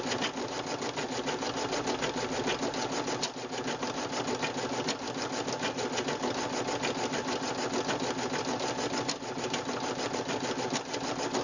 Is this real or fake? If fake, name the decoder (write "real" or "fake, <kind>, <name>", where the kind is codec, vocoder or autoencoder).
real